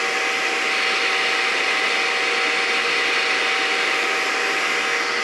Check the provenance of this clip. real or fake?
real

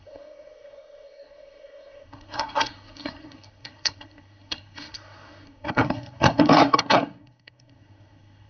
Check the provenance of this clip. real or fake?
fake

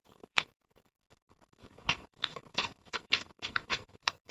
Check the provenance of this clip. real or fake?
fake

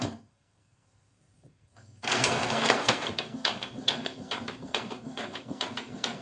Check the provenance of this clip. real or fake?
fake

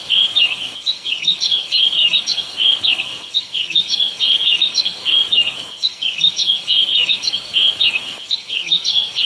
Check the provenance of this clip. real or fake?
fake